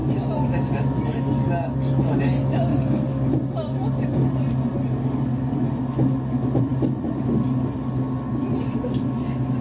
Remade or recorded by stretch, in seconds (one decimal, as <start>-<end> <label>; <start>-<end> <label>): 0.0-2.7 recorded; 2.7-3.3 remade; 3.3-9.6 recorded